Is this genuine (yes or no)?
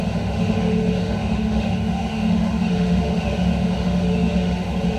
no